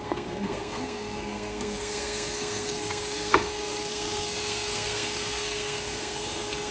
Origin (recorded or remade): remade